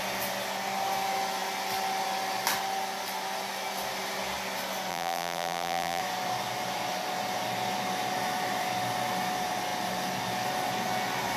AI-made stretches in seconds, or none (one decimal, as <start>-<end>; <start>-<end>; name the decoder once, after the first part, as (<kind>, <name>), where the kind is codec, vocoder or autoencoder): 4.9-6.0 (vocoder, BigVGAN v2)